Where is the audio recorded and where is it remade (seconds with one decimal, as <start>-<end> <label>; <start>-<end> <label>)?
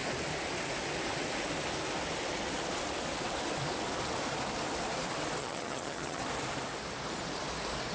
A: 0.0-5.4 recorded; 5.4-6.2 remade; 6.2-7.9 recorded